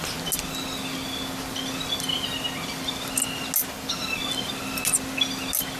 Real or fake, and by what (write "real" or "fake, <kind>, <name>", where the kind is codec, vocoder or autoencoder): real